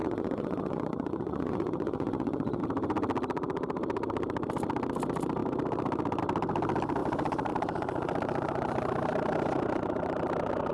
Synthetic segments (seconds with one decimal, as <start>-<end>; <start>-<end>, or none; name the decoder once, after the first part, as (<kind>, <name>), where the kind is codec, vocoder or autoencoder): 0.0-2.6 (vocoder, Vocos)